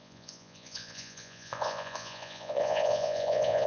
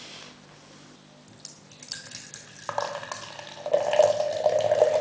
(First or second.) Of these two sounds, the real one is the second